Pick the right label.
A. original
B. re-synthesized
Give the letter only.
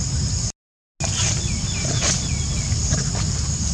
A